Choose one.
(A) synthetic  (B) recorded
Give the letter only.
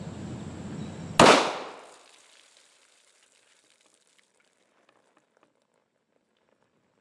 B